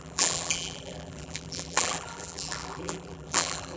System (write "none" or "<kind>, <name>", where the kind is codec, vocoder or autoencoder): vocoder, BigVGAN v2